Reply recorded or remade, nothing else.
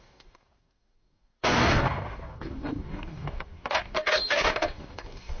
remade